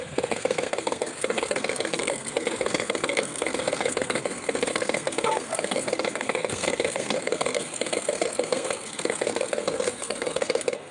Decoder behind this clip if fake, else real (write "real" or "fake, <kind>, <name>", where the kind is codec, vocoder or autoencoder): fake, codec, SNAC